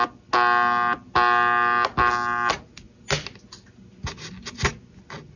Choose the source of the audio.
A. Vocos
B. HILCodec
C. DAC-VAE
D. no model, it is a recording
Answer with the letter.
D